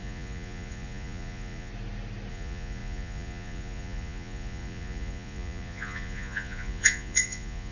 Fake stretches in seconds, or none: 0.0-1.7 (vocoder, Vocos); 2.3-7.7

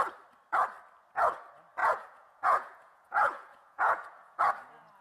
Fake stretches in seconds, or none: 1.8-4.5 (vocoder, Vocos)

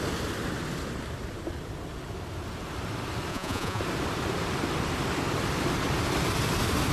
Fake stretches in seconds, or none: 3.3-3.8 (vocoder, Vocos)

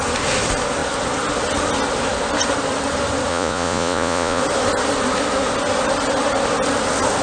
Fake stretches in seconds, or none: 3.3-4.4 (vocoder, Vocos)

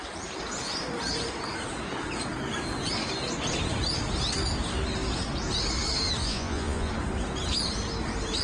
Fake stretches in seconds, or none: 6.2-6.9 (vocoder, Vocos)

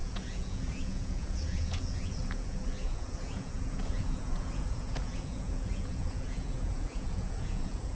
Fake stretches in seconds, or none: 0.0-7.9 (vocoder, Vocos)

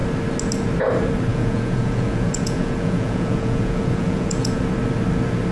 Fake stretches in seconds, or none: 1.3-4.6 (vocoder, Vocos)

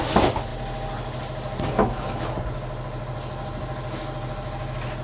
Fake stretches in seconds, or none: none